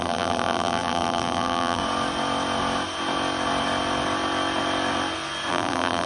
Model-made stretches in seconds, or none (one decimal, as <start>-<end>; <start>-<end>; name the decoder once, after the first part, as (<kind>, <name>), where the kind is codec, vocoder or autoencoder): 0.0-1.8 (vocoder, BigVGAN v2); 5.5-6.1